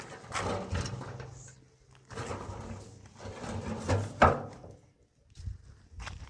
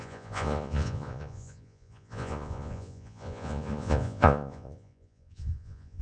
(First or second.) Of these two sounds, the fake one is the second